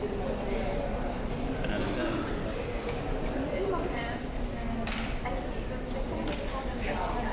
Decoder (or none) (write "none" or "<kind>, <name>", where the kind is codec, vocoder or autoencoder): none